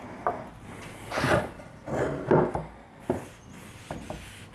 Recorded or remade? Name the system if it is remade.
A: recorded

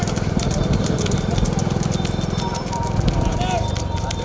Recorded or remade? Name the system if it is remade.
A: recorded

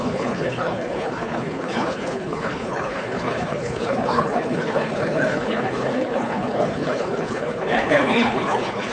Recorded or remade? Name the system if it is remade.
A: remade, codec, HILCodec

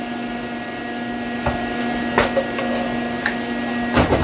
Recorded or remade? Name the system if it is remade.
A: recorded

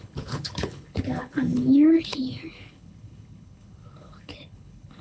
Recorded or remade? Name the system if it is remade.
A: remade, codec, HILCodec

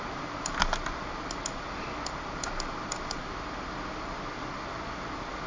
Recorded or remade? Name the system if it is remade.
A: recorded